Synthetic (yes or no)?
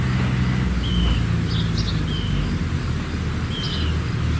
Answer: no